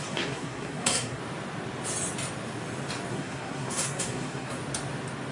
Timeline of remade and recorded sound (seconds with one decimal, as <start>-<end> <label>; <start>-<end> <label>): 0.0-1.2 remade; 1.2-3.1 recorded; 3.1-4.6 remade; 4.6-5.3 recorded